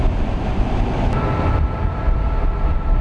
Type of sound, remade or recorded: recorded